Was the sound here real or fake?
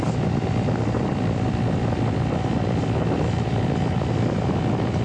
real